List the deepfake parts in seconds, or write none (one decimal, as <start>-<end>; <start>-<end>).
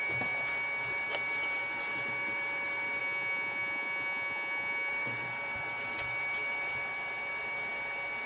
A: 3.0-4.9